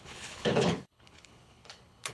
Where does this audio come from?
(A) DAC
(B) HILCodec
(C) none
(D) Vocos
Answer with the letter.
B